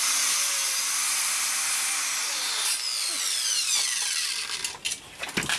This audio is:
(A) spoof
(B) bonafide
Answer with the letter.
B